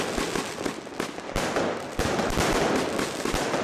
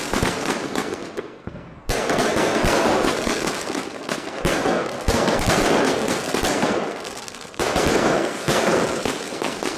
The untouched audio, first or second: first